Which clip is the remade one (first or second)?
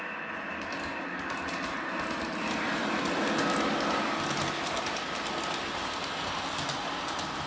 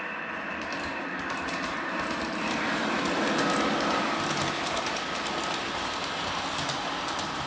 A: second